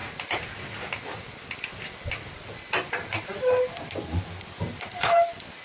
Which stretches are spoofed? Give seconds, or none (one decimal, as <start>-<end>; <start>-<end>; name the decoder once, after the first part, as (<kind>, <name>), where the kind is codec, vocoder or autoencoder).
none

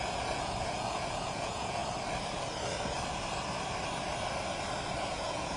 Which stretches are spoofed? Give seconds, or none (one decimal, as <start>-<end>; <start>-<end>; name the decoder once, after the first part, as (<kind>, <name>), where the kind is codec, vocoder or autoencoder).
0.0-1.8 (vocoder, Vocos); 5.0-5.6